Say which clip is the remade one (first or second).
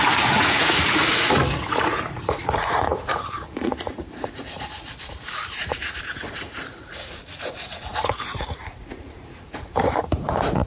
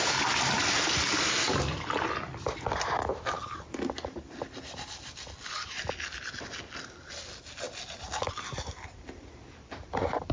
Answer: first